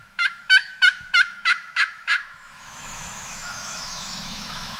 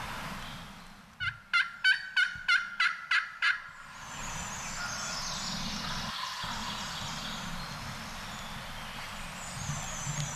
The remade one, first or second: first